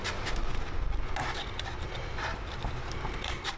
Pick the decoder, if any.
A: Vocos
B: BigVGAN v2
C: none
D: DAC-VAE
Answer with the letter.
C